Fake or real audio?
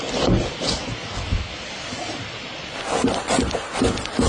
real